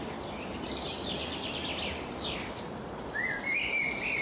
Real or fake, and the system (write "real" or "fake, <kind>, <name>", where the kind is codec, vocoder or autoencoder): real